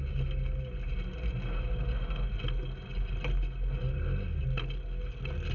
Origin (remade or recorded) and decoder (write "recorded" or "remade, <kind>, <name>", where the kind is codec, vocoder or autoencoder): recorded